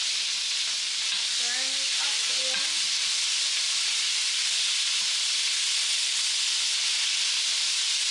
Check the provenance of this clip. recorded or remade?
recorded